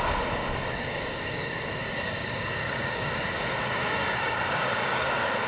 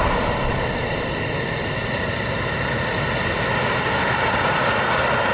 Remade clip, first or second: first